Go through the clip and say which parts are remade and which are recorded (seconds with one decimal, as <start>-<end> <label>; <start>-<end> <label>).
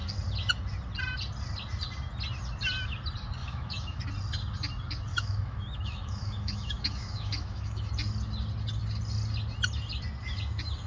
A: 0.0-3.4 recorded; 3.4-4.0 remade; 4.0-5.1 recorded; 5.1-7.9 remade; 7.9-10.9 recorded